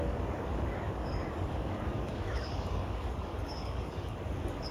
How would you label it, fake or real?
fake